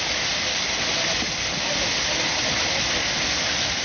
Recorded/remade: recorded